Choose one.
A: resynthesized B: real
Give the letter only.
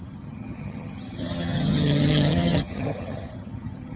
A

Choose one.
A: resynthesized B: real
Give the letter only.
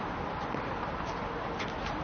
B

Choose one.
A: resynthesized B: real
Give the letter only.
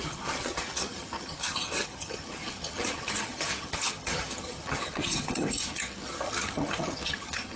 A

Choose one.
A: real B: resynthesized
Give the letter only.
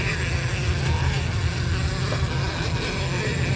A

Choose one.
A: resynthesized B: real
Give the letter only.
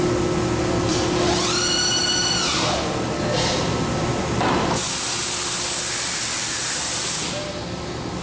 B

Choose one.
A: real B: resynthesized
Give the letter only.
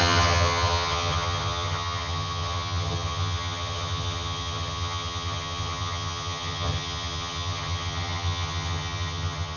B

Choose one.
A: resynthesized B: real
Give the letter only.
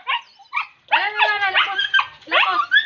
B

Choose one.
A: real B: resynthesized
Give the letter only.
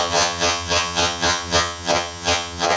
B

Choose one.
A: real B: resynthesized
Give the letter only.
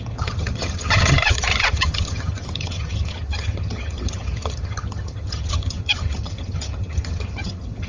B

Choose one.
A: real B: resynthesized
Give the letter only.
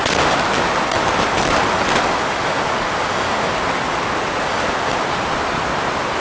A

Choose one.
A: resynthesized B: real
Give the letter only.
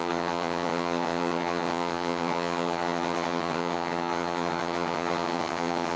A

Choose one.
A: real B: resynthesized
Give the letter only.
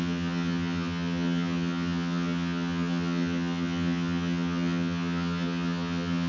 B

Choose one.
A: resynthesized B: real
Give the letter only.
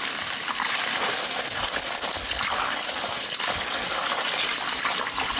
B